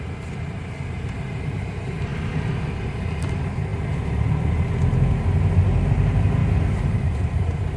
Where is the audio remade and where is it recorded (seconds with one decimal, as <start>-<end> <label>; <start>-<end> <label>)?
0.0-7.8 recorded